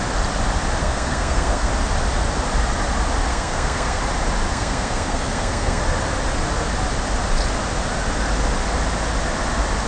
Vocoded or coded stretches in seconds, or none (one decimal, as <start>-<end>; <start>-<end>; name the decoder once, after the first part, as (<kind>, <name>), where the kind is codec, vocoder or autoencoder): 0.8-1.7 (codec, SNAC); 3.3-4.0; 4.5-5.8

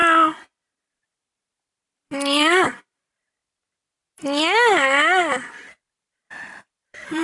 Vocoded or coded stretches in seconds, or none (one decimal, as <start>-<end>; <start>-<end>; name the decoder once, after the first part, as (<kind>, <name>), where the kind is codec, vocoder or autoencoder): 0.7-3.4 (vocoder, BigVGAN v2); 5.7-7.2

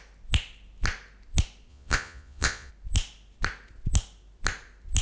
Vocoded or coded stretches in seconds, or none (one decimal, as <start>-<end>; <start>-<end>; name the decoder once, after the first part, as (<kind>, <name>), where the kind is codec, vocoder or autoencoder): 1.7-2.7 (vocoder, Vocos)

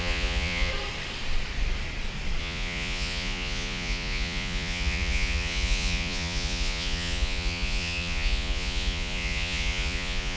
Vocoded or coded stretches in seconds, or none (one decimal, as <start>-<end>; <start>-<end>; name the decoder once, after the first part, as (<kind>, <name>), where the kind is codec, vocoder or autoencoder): 0.0-0.7 (vocoder, Vocos); 2.4-10.4

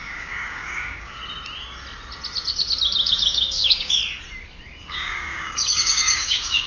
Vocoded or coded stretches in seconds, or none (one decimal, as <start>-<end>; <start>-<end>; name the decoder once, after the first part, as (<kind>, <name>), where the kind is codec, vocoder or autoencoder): 0.0-1.2 (codec, DAC); 3.1-4.0; 4.8-6.7

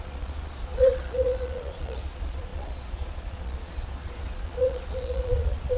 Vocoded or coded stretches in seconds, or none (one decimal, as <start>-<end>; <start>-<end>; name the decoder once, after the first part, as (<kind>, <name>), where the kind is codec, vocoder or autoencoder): 0.0-5.8 (vocoder, Vocos)

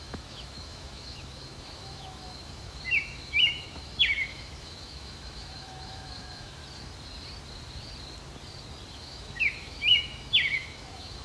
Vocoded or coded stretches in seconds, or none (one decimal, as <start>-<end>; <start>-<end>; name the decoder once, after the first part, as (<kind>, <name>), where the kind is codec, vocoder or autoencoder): 0.0-6.6 (autoencoder, DAC-VAE); 8.9-11.2